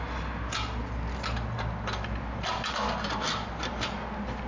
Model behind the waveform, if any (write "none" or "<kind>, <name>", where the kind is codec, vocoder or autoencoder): none